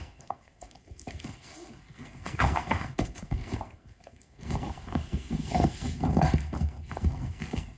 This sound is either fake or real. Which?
fake